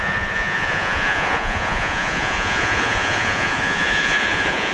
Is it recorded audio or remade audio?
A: remade